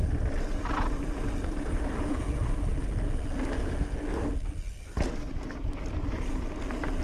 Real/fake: real